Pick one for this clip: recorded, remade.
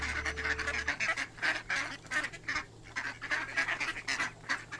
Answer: recorded